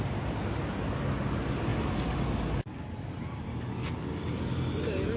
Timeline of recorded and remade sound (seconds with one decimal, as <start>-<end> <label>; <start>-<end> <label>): 0.0-5.2 recorded